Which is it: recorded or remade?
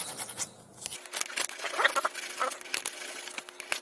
recorded